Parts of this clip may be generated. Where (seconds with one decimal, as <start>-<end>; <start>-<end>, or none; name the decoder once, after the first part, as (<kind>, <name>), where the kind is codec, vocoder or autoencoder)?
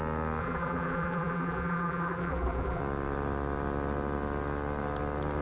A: 0.4-2.8 (vocoder, BigVGAN v2)